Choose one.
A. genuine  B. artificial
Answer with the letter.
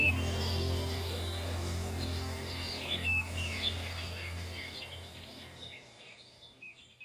B